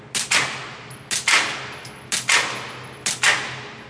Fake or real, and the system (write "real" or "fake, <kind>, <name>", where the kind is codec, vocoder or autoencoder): real